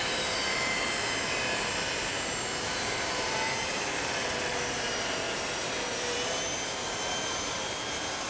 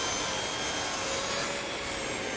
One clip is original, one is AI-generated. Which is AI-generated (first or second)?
first